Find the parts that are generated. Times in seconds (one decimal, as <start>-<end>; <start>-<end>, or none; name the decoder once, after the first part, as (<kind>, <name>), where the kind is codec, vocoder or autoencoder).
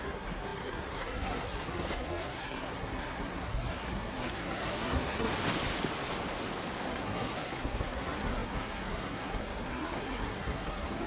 0.0-5.3 (codec, SNAC); 6.9-11.1